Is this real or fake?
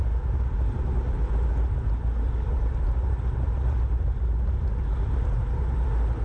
real